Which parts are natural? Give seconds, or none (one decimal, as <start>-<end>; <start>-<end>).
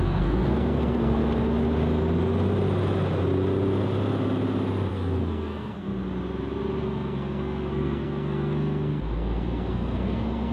1.2-4.9; 5.9-6.8